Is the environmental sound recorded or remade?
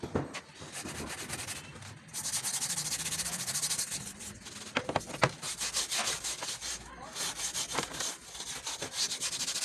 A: recorded